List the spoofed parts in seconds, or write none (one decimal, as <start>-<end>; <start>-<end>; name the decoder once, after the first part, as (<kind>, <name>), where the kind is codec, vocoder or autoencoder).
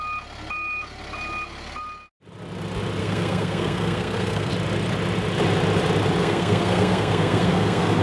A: 3.0-4.5 (codec, SNAC); 6.2-8.0